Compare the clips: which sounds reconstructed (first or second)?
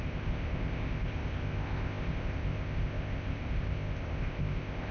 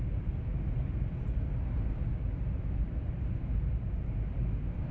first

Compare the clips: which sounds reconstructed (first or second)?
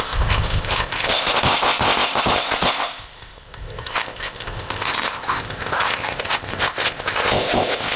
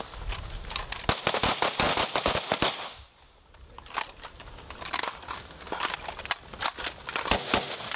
first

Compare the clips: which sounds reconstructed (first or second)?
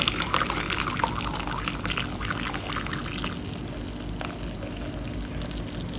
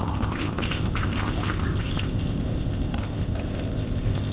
second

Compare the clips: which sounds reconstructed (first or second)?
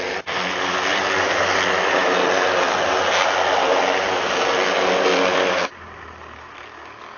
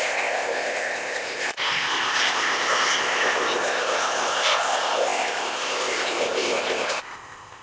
second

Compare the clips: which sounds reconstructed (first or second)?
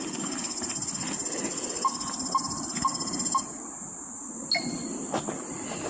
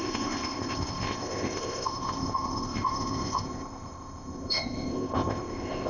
second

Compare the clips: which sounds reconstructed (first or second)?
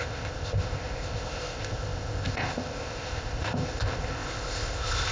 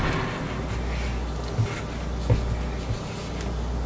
first